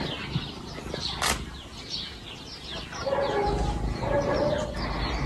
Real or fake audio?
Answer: real